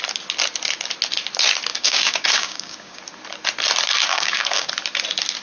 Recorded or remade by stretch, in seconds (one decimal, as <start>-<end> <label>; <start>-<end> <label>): 0.0-1.7 recorded; 1.7-3.0 remade; 3.0-4.1 recorded; 4.1-4.7 remade; 4.7-5.4 recorded

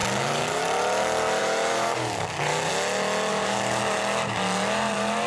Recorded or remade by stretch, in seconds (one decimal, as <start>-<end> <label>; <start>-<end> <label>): 0.0-0.6 remade; 0.6-1.4 recorded; 1.4-2.7 remade; 2.7-3.3 recorded; 3.3-3.8 remade; 3.8-5.3 recorded

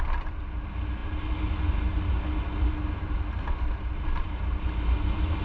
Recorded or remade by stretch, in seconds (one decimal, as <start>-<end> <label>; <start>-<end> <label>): 0.0-5.4 recorded

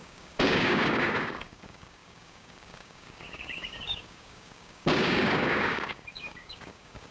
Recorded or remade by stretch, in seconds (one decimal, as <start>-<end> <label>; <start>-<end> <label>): 0.0-7.1 remade